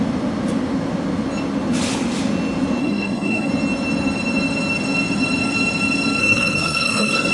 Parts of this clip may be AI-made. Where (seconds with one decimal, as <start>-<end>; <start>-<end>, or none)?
2.8-3.5; 6.2-7.3